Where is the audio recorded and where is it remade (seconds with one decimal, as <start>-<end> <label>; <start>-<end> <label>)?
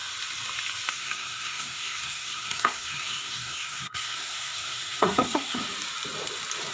0.0-0.9 recorded; 0.9-5.6 remade; 5.6-6.7 recorded